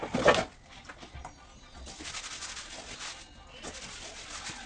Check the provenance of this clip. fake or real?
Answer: real